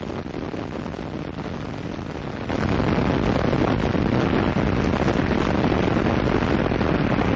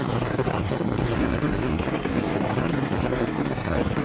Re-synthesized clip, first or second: second